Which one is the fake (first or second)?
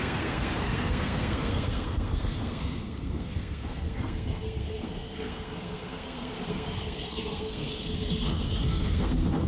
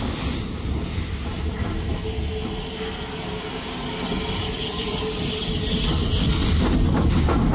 first